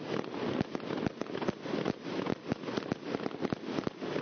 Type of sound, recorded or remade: recorded